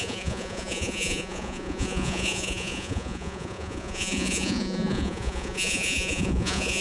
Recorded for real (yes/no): no